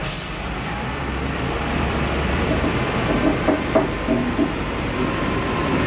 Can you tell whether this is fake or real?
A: fake